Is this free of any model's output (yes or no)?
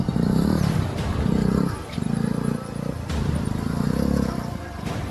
no